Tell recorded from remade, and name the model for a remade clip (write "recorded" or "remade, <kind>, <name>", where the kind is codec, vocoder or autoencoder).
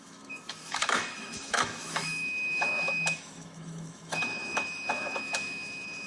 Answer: remade, autoencoder, DAC-VAE